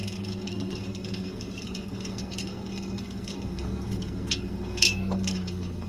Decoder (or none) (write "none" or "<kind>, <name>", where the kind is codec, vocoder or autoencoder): codec, SNAC